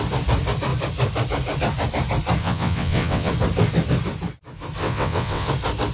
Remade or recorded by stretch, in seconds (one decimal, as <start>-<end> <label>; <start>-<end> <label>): 0.0-2.4 recorded; 2.4-3.3 remade; 3.3-4.8 recorded; 4.8-5.5 remade; 5.5-5.9 recorded